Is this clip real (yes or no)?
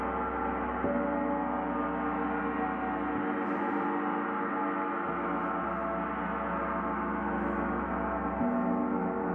yes